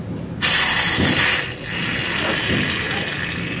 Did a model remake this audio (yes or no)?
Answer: no